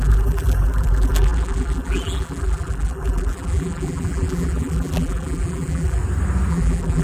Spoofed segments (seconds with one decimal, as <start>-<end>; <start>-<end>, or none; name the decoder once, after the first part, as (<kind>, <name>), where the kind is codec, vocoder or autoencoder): 0.0-6.0 (vocoder, BigVGAN v2); 6.5-7.0